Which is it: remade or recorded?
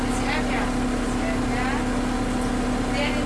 recorded